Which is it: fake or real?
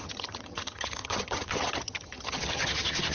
fake